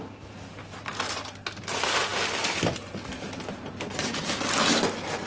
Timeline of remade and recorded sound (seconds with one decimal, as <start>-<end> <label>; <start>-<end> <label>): 0.0-5.3 recorded